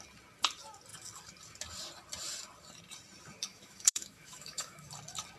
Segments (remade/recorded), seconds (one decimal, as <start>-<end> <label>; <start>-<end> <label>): 0.0-3.5 recorded; 3.5-4.9 remade; 4.9-5.4 recorded